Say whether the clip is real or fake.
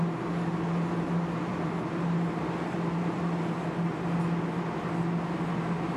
real